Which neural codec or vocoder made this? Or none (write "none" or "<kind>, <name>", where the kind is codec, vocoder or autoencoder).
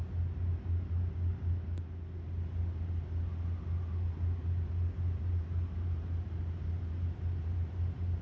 none